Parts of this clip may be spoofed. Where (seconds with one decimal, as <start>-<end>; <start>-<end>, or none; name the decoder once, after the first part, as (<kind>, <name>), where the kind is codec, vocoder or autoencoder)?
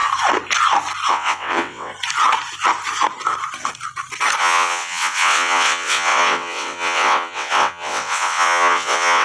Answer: 1.1-1.9 (vocoder, WaveNeXt); 4.4-9.2